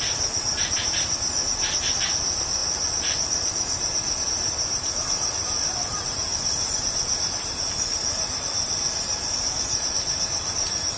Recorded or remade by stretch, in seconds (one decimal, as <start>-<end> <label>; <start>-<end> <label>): 0.0-11.0 recorded